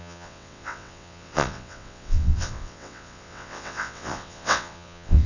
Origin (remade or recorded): remade